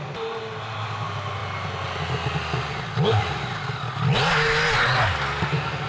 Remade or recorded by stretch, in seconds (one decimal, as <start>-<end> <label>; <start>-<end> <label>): 0.0-5.9 recorded